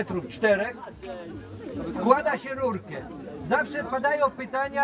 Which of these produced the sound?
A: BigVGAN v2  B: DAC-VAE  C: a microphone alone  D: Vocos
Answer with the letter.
C